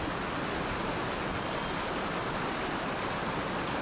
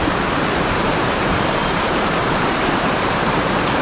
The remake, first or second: second